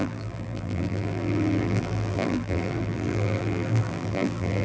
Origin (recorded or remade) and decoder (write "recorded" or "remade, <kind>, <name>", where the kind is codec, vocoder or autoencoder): remade, vocoder, BigVGAN v2